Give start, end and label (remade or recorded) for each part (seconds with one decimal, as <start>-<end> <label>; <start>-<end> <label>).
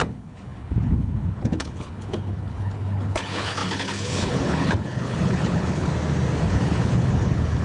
0.0-5.9 remade; 5.9-6.5 recorded; 6.5-7.6 remade